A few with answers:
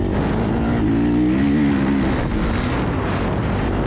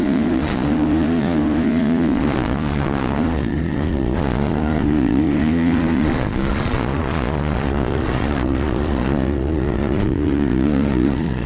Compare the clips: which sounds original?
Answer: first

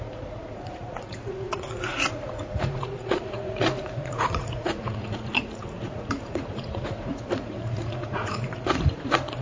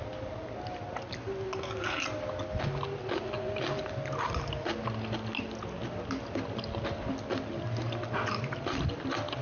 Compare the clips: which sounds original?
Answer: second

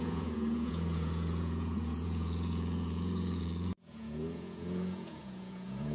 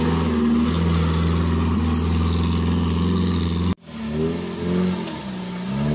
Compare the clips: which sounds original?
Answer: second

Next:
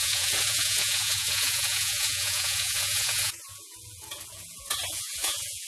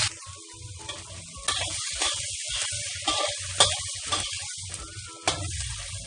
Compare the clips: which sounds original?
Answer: second